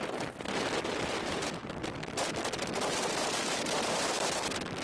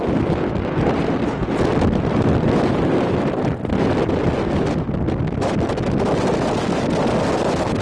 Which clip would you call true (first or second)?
second